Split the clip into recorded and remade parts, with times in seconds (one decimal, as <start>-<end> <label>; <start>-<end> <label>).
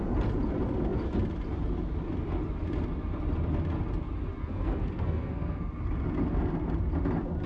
0.0-4.4 recorded; 4.4-5.7 remade; 5.7-7.5 recorded